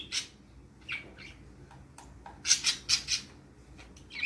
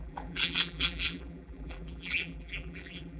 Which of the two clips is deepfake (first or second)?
second